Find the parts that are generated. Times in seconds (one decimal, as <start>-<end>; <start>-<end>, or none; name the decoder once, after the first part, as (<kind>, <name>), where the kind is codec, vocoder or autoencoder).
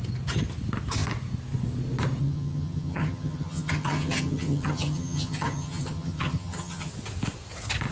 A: 2.2-6.9 (vocoder, HiFi-GAN)